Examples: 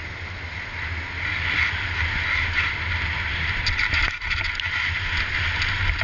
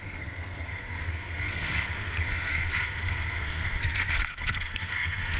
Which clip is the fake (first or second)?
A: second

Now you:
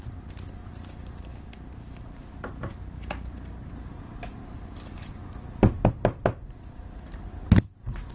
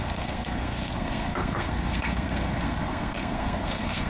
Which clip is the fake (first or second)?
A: second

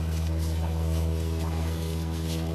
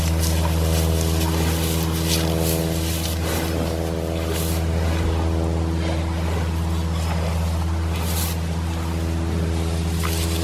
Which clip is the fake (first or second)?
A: first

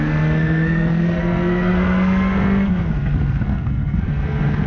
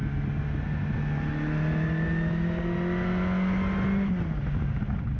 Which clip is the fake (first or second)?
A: first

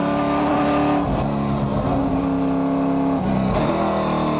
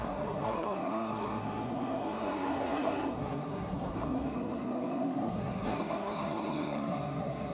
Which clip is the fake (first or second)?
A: second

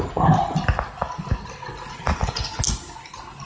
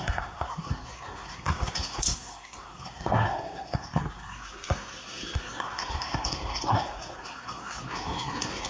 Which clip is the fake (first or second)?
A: second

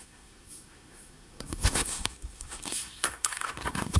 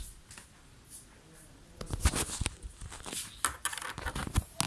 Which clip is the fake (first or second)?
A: first